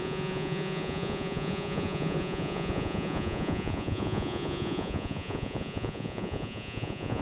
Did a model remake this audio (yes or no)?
yes